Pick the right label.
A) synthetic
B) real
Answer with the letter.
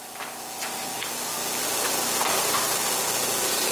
B